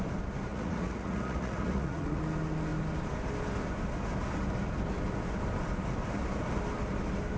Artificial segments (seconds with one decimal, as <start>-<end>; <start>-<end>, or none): 0.5-2.2